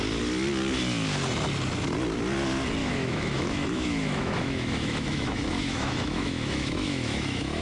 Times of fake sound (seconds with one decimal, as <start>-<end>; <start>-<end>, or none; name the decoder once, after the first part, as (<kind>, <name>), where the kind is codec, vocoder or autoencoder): 2.8-7.6 (autoencoder, DAC-VAE)